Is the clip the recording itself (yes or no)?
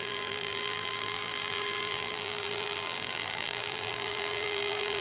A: no